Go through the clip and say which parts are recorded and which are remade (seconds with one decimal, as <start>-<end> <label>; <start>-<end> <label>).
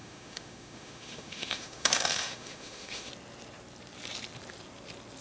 0.0-3.1 remade; 3.1-5.2 recorded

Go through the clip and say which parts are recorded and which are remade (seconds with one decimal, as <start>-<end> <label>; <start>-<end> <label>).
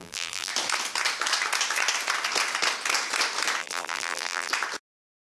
0.0-0.5 remade; 0.5-3.6 recorded; 3.6-4.5 remade; 4.5-5.3 recorded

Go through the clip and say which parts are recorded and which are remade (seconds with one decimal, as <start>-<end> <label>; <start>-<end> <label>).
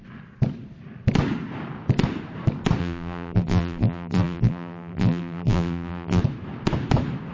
0.0-2.8 recorded; 2.8-6.2 remade; 6.2-7.3 recorded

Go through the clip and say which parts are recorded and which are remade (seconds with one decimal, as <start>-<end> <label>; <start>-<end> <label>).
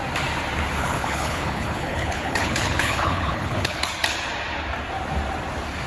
0.0-0.8 recorded; 0.8-3.8 remade; 3.8-5.9 recorded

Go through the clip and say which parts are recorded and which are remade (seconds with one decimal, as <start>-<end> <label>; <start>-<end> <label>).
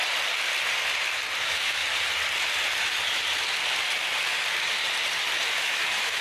0.0-1.4 recorded; 1.4-1.8 remade; 1.8-5.5 recorded; 5.5-6.2 remade